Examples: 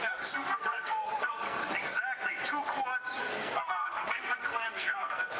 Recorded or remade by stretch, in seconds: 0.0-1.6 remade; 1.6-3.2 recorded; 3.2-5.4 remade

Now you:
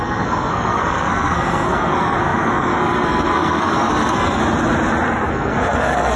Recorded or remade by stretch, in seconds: 0.0-4.4 remade; 4.4-5.3 recorded; 5.3-6.2 remade

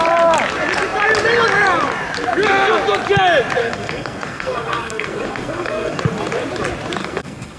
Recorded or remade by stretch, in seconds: 0.0-3.6 recorded; 3.6-6.0 remade; 6.0-7.0 recorded; 7.0-7.6 remade

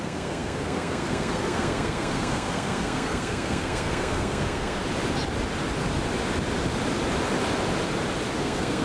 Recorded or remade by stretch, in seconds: 0.0-4.8 remade; 4.8-8.4 recorded; 8.4-8.8 remade